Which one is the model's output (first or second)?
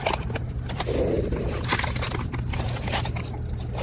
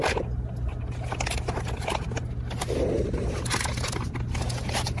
first